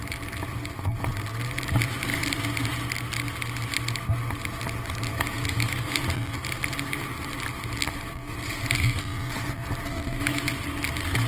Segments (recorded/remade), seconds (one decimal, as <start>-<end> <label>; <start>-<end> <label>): 0.0-5.1 recorded; 5.1-6.0 remade; 6.0-9.9 recorded; 9.9-10.5 remade; 10.5-11.3 recorded